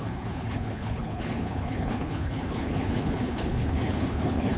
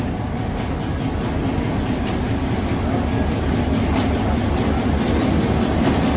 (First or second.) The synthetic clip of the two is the first